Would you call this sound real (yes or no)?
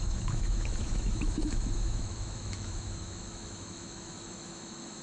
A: no